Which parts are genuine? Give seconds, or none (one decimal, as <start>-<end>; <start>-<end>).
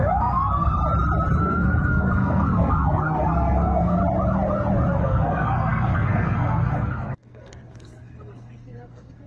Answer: 0.8-1.4; 4.0-5.0